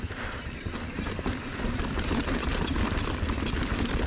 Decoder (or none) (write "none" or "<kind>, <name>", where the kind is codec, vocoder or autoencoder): vocoder, BigVGAN v2